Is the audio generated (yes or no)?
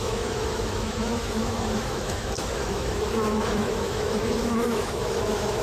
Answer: yes